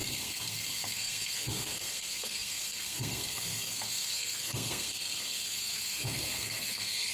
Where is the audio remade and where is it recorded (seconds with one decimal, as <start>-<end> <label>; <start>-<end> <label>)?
0.0-7.1 remade